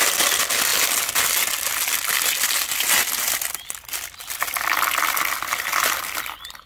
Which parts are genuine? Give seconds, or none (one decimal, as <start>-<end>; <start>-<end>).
0.0-6.7

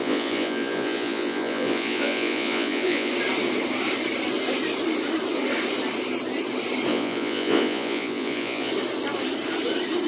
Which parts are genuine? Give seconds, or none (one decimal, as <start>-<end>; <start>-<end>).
3.1-6.9; 8.7-10.1

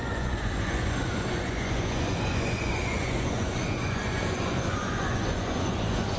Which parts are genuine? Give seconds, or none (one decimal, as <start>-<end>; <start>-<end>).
none

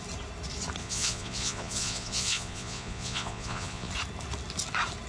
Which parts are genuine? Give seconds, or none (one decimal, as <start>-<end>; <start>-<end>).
0.0-0.8; 3.9-5.1

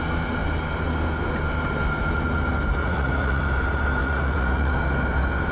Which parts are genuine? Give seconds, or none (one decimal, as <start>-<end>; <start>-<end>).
0.0-2.8; 3.4-4.0; 4.7-5.5